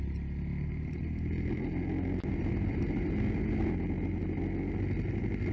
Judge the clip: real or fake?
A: real